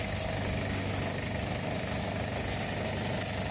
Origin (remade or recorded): recorded